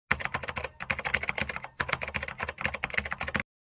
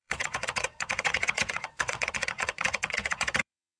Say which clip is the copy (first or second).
second